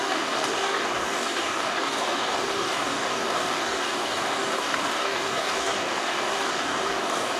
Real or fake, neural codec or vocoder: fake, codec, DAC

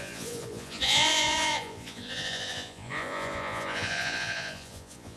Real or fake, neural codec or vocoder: fake, vocoder, Vocos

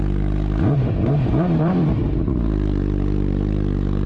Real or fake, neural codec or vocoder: fake, vocoder, BigVGAN v2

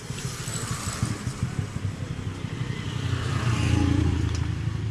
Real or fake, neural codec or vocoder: fake, vocoder, BigVGAN v2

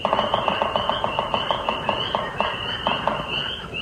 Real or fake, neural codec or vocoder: fake, vocoder, BigVGAN v2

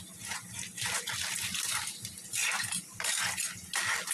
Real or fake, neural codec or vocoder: real